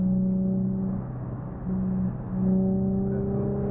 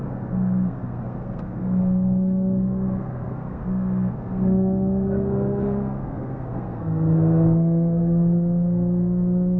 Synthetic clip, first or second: second